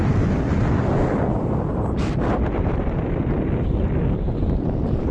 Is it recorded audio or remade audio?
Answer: recorded